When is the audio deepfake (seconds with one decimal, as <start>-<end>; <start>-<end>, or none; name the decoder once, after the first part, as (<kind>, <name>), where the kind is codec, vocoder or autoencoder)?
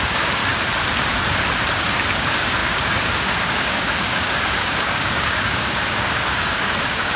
0.0-0.4 (codec, DAC); 2.1-7.2